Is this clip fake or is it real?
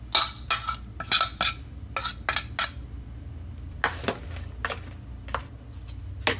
real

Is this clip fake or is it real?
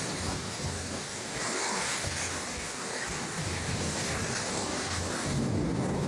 fake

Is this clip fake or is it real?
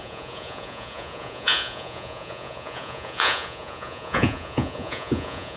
fake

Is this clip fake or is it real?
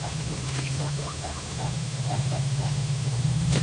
fake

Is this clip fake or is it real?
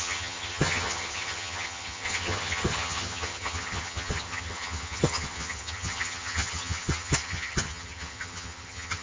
fake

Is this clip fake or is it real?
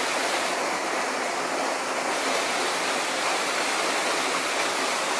real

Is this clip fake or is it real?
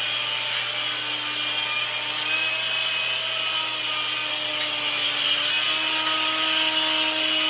real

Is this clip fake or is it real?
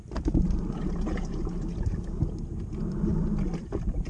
real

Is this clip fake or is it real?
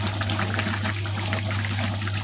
real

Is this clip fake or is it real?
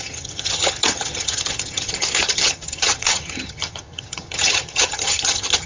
fake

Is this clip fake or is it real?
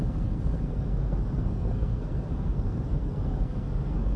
fake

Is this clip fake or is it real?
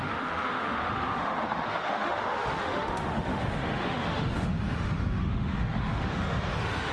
fake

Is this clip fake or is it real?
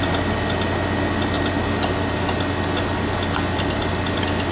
real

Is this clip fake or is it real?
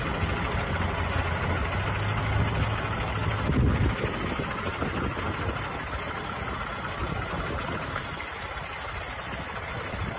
real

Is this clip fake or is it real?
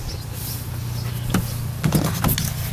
real